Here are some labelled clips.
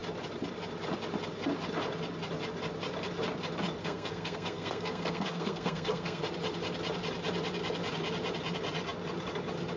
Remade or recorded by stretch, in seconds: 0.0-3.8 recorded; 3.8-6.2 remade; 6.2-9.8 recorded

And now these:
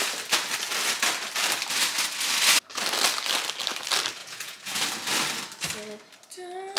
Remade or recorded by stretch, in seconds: 0.0-4.2 recorded; 4.2-4.8 remade; 4.8-6.8 recorded

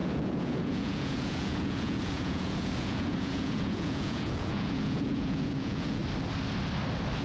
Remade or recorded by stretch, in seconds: 0.0-6.0 remade; 6.0-7.2 recorded

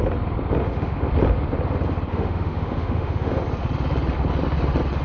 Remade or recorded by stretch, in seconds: 0.0-0.6 recorded; 0.6-1.1 remade; 1.1-2.1 recorded; 2.1-3.4 remade; 3.4-5.0 recorded

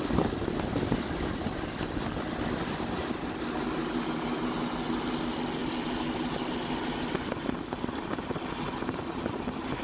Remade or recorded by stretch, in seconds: 0.0-9.8 recorded

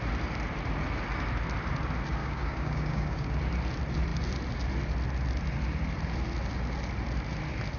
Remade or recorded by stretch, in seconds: 0.0-2.2 recorded; 2.2-3.4 remade; 3.4-7.8 recorded

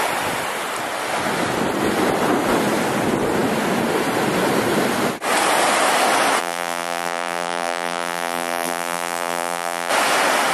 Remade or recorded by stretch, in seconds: 0.0-6.4 recorded; 6.4-9.9 remade; 9.9-10.5 recorded

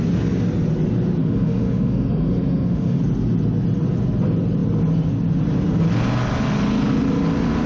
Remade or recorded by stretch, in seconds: 0.0-1.2 recorded; 1.2-3.0 remade; 3.0-7.7 recorded